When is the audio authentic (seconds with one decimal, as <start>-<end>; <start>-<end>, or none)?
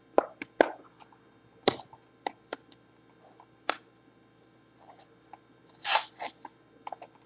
0.0-2.5; 4.9-7.3